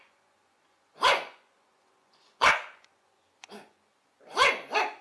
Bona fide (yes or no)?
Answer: no